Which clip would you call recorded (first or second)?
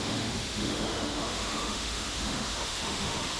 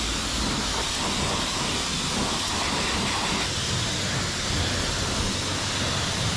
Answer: second